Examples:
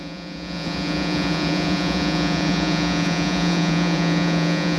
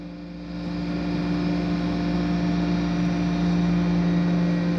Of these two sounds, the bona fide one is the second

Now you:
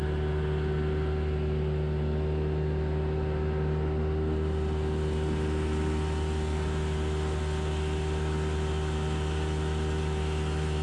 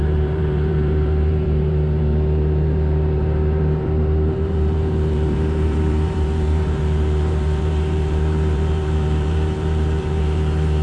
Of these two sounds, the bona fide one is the first